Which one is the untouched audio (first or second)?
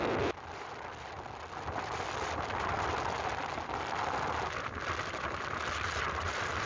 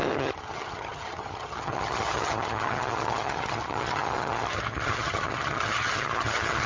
first